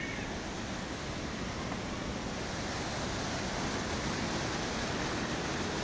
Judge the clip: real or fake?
real